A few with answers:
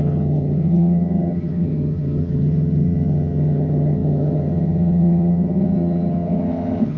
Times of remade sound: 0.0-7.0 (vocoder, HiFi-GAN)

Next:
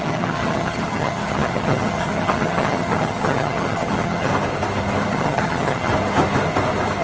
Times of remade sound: 0.0-4.3 (vocoder, HiFi-GAN); 5.1-5.9

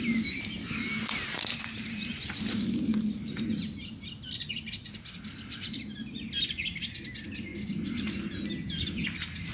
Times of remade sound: none